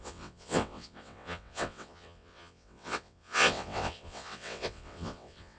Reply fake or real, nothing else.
fake